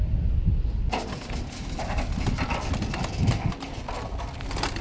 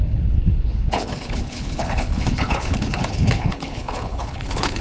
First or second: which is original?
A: first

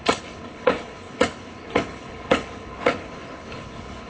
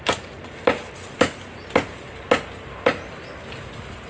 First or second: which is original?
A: second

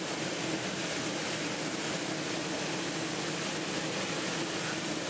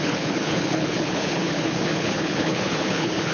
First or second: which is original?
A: first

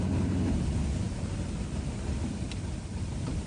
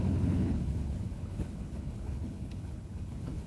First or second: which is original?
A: first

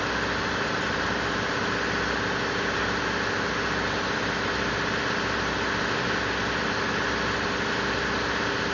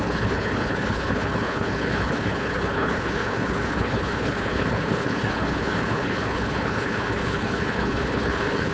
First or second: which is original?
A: first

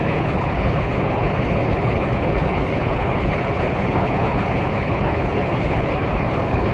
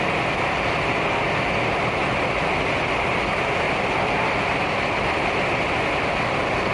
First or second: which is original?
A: second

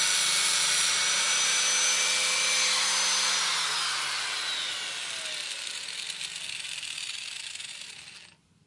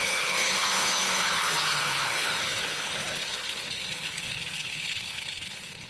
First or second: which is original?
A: first